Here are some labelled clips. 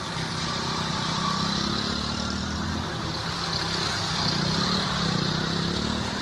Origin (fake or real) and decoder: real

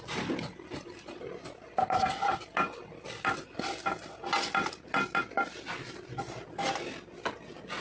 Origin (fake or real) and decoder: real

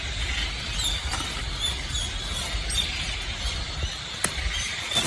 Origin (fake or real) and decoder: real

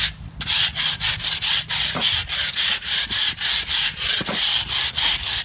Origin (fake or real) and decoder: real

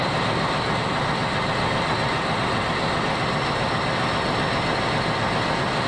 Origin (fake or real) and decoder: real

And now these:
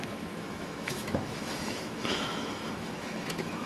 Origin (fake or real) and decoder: fake, autoencoder, DAC-VAE